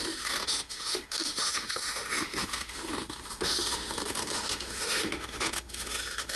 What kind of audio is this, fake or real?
fake